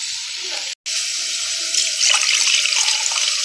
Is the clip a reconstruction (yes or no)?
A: no